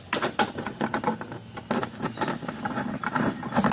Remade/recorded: recorded